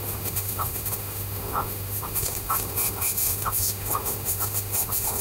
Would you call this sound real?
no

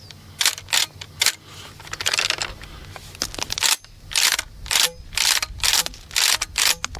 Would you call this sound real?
yes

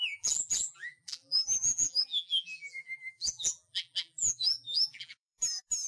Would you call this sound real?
no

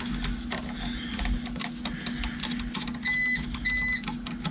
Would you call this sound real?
yes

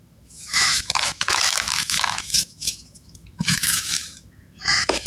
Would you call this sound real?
no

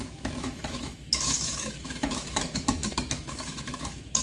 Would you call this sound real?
no